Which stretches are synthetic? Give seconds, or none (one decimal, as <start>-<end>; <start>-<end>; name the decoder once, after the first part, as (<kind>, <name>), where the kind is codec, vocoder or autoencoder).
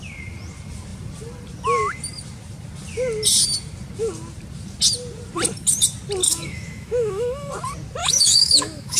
6.2-7.5 (autoencoder, DAC-VAE); 8.0-9.0